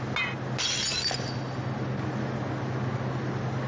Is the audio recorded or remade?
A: recorded